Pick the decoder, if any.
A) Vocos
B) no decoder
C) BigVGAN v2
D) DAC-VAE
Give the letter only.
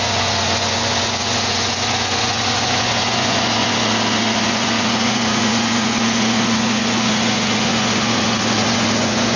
A